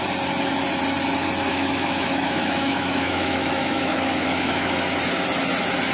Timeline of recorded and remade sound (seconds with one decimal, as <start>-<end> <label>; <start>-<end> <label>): 0.0-1.5 recorded; 1.5-5.0 remade; 5.0-5.9 recorded